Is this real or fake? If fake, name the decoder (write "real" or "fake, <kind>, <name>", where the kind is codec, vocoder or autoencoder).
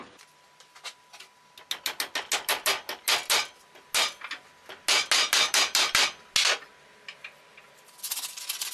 real